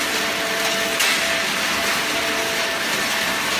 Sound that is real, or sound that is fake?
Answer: real